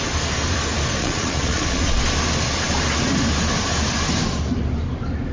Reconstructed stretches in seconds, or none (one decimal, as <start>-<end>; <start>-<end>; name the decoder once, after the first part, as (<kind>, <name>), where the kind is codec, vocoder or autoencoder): 1.0-2.0 (vocoder, Vocos)